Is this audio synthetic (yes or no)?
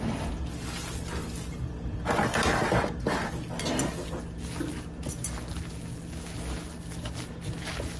no